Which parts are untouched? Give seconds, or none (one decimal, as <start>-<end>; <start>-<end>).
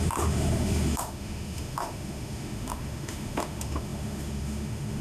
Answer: none